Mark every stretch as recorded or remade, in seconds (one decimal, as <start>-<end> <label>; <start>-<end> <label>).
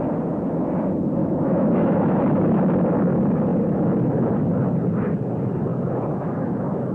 0.0-1.2 recorded; 1.2-2.2 remade; 2.2-5.7 recorded; 5.7-6.9 remade